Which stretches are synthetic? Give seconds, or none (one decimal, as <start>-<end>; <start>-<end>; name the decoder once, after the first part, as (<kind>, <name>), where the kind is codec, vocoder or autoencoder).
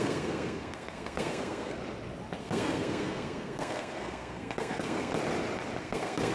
0.0-1.8 (codec, SNAC); 2.4-5.1; 5.8-6.3